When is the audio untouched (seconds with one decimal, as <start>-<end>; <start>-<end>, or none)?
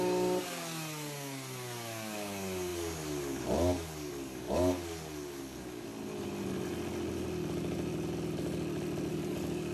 5.9-9.1